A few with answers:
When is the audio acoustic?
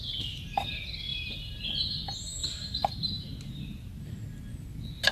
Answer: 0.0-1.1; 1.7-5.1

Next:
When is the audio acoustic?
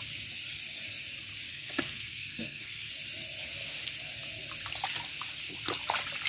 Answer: 0.0-1.5; 2.9-6.3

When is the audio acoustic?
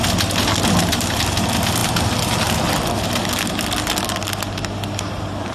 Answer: 0.0-5.5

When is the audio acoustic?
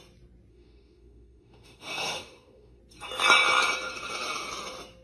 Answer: 0.0-0.5; 2.8-5.0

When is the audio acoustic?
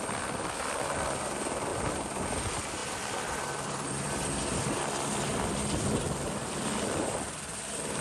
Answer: 0.0-1.7; 2.2-2.8; 4.3-5.1; 7.6-8.0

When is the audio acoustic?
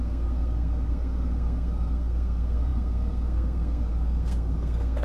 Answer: none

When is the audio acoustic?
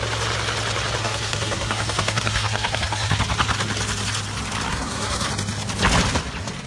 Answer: 0.0-1.0; 3.2-4.7; 5.3-6.7